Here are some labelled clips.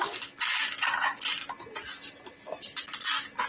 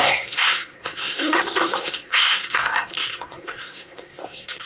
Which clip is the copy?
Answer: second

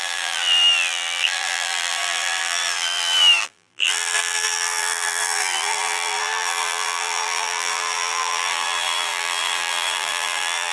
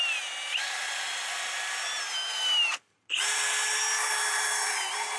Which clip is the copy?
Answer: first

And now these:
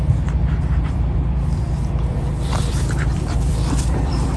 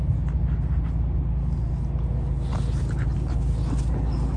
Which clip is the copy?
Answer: first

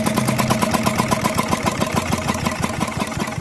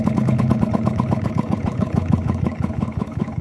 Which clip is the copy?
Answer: second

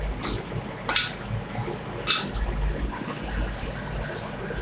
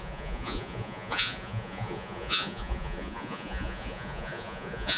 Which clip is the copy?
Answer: second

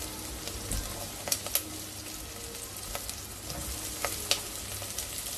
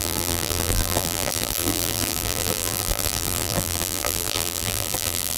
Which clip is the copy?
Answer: second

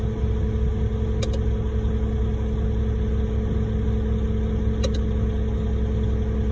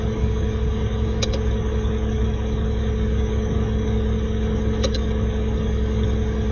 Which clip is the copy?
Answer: second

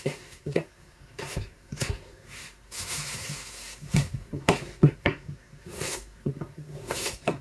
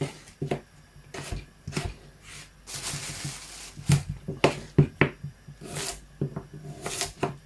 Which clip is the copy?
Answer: first